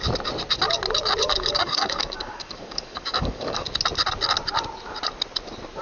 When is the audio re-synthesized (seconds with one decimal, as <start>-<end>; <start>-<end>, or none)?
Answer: 1.3-3.7